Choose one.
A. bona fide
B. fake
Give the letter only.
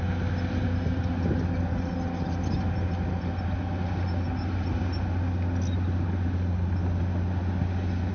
A